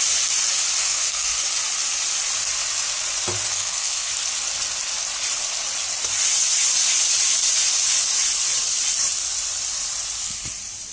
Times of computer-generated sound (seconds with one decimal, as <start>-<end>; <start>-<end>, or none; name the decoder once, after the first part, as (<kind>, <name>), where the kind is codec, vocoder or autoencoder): 0.8-1.4 (codec, SNAC); 3.5-4.1